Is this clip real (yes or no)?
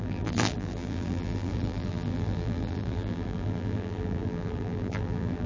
no